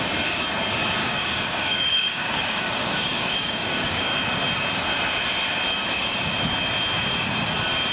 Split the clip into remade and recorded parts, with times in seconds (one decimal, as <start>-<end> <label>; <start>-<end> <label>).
0.0-1.0 recorded; 1.0-4.2 remade; 4.2-7.9 recorded